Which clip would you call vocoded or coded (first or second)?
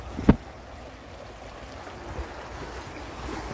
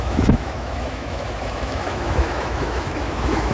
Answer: second